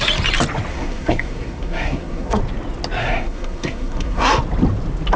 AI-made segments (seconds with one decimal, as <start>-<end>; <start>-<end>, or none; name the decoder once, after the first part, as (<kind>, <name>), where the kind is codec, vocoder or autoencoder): 0.7-2.4 (codec, SNAC); 3.0-4.3